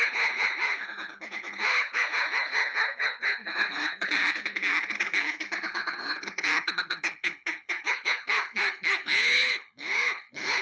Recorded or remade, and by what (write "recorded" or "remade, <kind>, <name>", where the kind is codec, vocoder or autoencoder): remade, codec, HILCodec